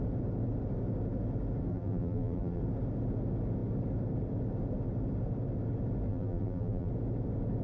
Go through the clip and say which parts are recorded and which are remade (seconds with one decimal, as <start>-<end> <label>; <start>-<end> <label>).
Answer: 0.0-1.7 recorded; 1.7-2.6 remade; 2.6-6.1 recorded; 6.1-6.9 remade; 6.9-7.6 recorded